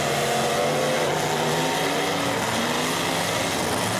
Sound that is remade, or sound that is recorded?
recorded